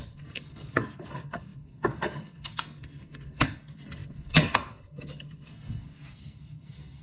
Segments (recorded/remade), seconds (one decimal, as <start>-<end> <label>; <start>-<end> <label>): 0.0-7.0 remade